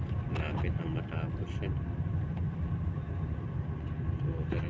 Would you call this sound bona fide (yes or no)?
yes